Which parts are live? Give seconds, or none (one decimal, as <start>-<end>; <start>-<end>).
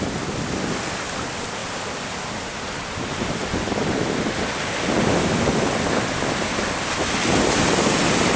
0.0-8.4